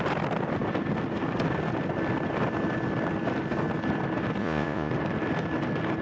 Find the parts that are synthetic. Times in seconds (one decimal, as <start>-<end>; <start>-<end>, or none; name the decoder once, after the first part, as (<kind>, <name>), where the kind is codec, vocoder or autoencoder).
4.4-4.9 (vocoder, Vocos)